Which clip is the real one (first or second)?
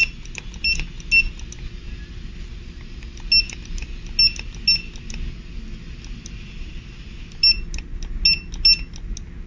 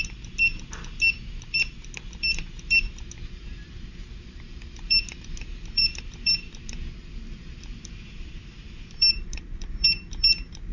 first